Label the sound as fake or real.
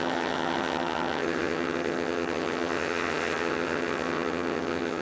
fake